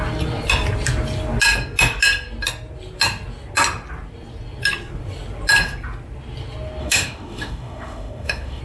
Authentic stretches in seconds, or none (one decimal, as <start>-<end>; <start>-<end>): 0.0-6.8